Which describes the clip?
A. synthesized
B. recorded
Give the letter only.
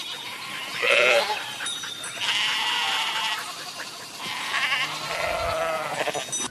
B